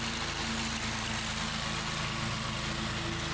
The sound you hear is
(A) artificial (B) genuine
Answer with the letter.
B